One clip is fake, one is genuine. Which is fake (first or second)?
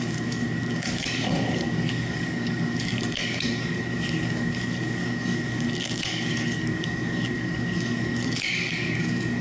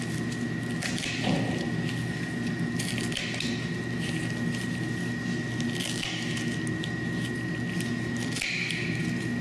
first